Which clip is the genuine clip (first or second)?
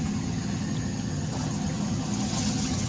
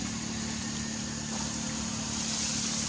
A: second